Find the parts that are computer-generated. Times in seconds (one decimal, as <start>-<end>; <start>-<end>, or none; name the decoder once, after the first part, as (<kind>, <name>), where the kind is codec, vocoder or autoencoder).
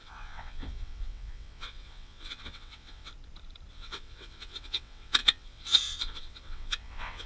0.0-3.1 (vocoder, WaveNeXt); 3.7-7.3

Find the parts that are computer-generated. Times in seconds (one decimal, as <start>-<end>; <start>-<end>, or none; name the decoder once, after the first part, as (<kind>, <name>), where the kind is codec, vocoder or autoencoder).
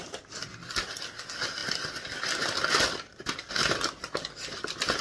none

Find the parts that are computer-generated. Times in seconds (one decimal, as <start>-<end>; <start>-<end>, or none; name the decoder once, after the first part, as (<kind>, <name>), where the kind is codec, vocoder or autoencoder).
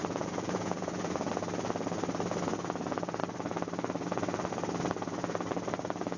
0.0-1.3 (vocoder, Vocos)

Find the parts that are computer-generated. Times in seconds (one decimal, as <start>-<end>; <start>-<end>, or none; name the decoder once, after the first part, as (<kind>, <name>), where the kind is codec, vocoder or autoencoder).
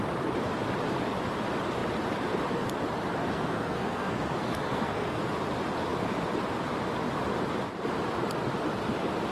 3.2-5.3 (codec, SNAC)